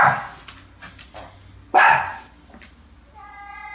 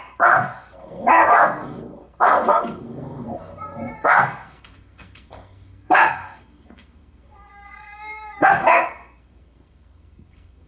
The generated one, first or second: second